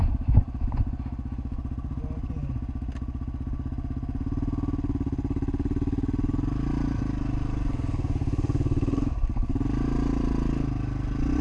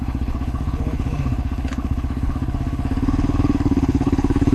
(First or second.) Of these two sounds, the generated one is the second